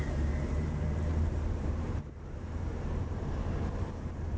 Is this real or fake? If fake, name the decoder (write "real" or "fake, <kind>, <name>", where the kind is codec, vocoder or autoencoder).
fake, vocoder, BigVGAN v2